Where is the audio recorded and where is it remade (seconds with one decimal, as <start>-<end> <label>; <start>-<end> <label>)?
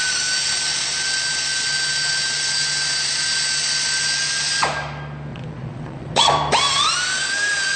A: 0.0-5.3 recorded; 5.3-6.3 remade; 6.3-7.8 recorded